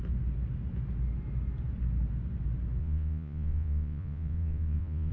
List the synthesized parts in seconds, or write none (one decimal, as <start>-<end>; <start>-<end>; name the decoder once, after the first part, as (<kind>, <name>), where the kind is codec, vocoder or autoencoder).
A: 2.8-5.1 (vocoder, Vocos)